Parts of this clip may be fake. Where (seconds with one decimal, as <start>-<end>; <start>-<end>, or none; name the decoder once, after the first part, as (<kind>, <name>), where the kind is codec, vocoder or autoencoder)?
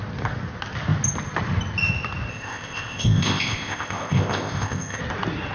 2.3-5.0 (codec, ZipCodec)